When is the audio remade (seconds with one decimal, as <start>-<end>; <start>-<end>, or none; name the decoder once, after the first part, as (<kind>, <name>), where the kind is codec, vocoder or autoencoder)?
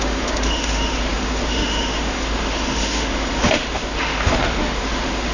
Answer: 0.0-5.3 (autoencoder, DAC-VAE)